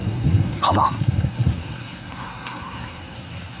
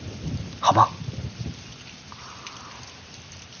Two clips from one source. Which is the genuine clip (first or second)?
second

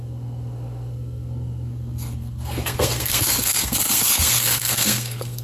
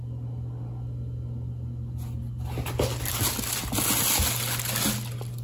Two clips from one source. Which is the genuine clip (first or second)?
second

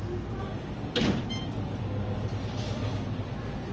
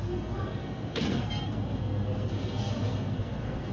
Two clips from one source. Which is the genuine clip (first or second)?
first